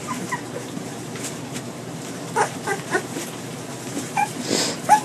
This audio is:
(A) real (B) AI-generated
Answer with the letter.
B